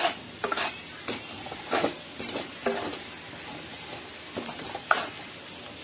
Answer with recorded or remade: recorded